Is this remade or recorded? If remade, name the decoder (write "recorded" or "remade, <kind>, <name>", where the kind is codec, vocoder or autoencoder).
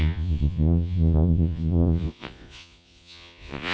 remade, vocoder, Vocos